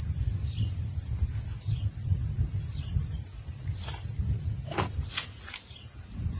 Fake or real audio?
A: real